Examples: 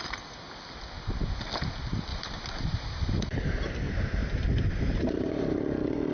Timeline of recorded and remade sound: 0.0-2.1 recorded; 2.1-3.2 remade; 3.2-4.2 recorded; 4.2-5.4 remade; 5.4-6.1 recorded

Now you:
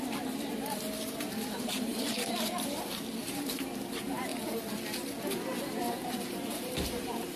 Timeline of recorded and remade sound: 0.0-4.3 remade; 4.3-5.6 recorded; 5.6-7.4 remade